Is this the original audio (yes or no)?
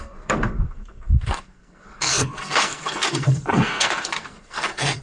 no